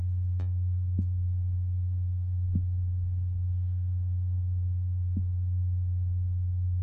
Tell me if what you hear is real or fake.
fake